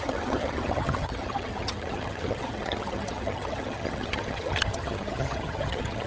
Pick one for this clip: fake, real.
fake